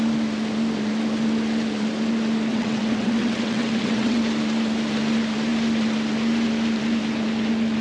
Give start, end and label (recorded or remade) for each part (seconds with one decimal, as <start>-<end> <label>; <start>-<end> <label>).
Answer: 0.0-2.5 recorded; 2.5-4.2 remade; 4.2-7.8 recorded